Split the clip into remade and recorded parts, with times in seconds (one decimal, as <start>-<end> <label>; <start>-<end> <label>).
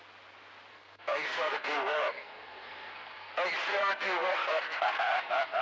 0.0-0.7 recorded; 0.7-3.3 remade; 3.3-3.7 recorded; 3.7-5.6 remade